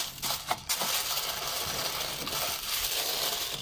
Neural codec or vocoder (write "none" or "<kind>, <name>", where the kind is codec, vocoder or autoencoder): none